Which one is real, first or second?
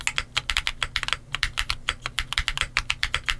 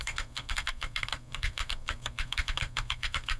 first